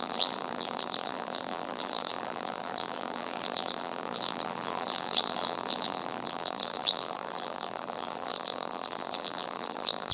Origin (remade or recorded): remade